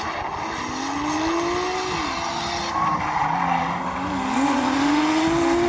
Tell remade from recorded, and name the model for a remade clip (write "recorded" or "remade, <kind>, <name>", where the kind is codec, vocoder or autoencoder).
recorded